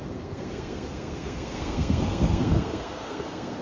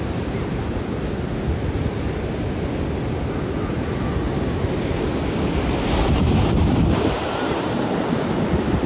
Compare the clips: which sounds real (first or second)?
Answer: second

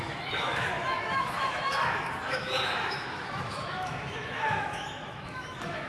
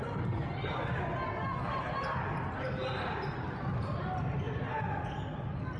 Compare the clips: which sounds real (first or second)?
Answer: second